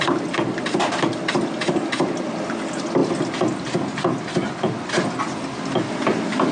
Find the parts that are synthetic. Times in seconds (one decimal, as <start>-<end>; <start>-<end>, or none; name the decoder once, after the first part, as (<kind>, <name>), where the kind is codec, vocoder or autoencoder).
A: none